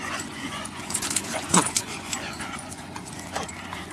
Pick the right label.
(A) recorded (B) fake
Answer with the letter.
B